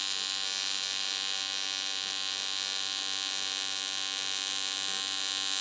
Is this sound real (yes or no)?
yes